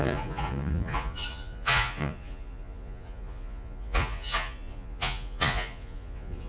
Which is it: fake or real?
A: fake